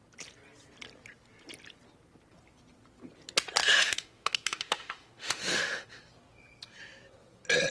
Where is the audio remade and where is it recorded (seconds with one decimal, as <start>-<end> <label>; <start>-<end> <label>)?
0.0-3.6 recorded; 3.6-6.0 remade; 6.0-7.7 recorded